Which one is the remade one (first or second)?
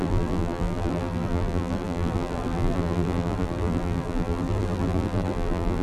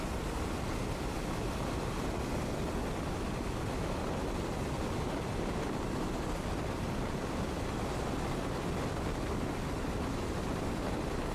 first